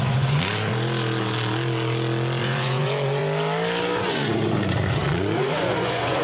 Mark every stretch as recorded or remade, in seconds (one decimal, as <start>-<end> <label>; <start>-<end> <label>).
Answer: 0.0-0.7 remade; 0.7-2.4 recorded; 2.4-3.2 remade; 3.2-4.0 recorded; 4.0-6.2 remade

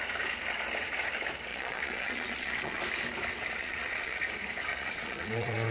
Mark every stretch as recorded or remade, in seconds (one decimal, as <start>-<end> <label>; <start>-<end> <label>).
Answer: 0.0-1.5 recorded; 1.5-2.8 remade; 2.8-3.6 recorded; 3.6-4.2 remade; 4.2-4.7 recorded; 4.7-5.7 remade

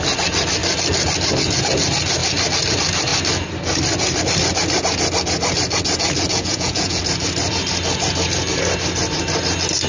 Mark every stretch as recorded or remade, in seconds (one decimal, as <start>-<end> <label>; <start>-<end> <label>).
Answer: 0.0-6.3 recorded; 6.3-7.0 remade; 7.0-9.9 recorded